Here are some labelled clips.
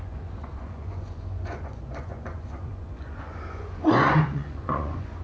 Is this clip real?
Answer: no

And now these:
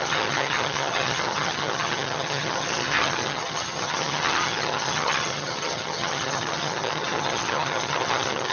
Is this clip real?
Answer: no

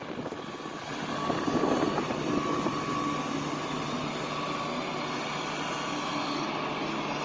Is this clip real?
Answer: yes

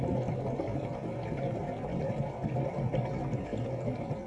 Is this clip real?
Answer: yes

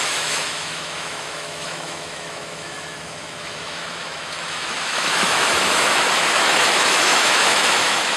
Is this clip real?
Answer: no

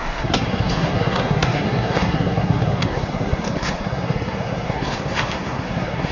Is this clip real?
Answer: no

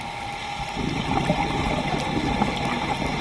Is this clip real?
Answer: yes